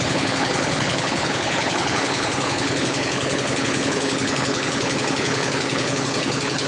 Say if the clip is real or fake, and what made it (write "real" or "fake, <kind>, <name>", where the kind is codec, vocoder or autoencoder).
fake, codec, HILCodec